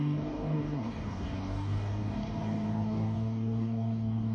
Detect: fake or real fake